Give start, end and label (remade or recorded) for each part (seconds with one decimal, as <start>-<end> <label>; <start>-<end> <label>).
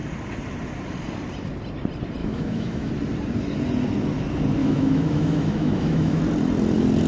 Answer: 0.0-2.2 recorded; 2.2-2.9 remade; 2.9-4.6 recorded; 4.6-6.2 remade; 6.2-7.1 recorded